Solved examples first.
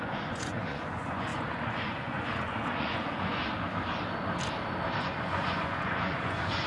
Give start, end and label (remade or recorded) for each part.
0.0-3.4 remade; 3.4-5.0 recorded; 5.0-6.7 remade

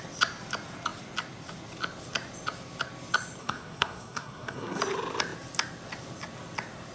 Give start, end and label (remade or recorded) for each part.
0.0-3.4 recorded; 3.4-4.8 remade; 4.8-6.9 recorded

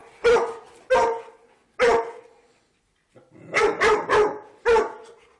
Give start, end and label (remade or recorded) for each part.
0.0-5.4 recorded

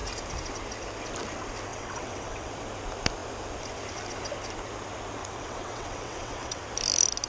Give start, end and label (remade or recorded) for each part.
0.0-1.7 recorded; 1.7-2.5 remade; 2.5-5.2 recorded; 5.2-6.6 remade; 6.6-7.3 recorded

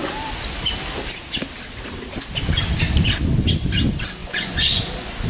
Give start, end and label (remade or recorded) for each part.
0.0-4.2 recorded; 4.2-4.8 remade; 4.8-5.3 recorded

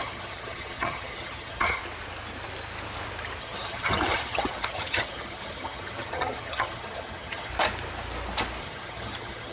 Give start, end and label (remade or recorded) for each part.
0.0-1.8 remade; 1.8-3.4 recorded; 3.4-7.5 remade; 7.5-8.6 recorded; 8.6-9.5 remade

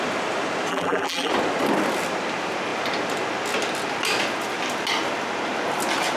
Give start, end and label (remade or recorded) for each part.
0.0-0.7 recorded; 0.7-1.3 remade; 1.3-6.2 recorded